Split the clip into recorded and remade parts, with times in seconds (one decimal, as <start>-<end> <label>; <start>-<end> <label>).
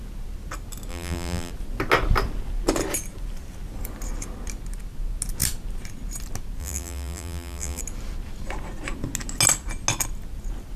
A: 0.0-0.9 recorded; 0.9-1.5 remade; 1.5-6.6 recorded; 6.6-7.8 remade; 7.8-10.8 recorded